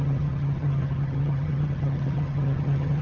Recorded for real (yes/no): no